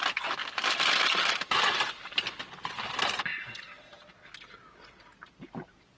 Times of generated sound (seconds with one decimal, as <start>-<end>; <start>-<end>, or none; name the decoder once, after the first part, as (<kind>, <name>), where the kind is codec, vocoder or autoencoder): 0.4-2.1 (vocoder, BigVGAN v2); 3.3-3.8